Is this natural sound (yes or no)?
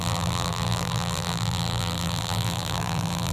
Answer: no